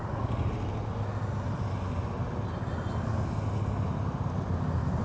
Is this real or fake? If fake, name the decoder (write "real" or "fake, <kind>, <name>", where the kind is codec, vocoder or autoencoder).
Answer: real